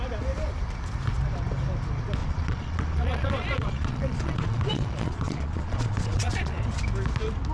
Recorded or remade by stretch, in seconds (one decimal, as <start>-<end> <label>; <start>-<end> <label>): 0.0-2.2 recorded; 2.2-6.6 remade; 6.6-7.5 recorded